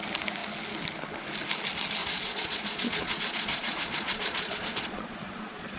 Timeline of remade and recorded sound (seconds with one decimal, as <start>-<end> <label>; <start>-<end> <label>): 0.0-2.0 recorded; 2.0-5.8 remade